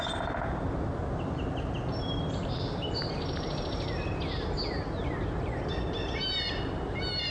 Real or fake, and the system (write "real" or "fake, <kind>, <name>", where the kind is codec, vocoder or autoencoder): real